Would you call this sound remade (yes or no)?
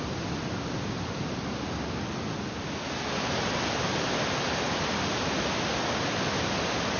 no